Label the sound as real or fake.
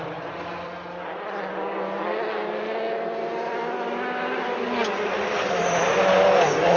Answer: real